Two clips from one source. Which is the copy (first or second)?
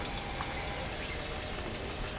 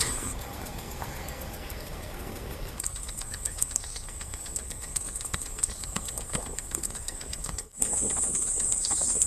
second